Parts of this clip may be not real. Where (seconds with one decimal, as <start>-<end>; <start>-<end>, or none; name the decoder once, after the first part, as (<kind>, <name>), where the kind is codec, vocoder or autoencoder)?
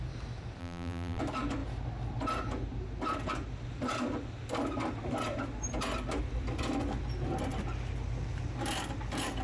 0.6-1.2 (vocoder, BigVGAN v2)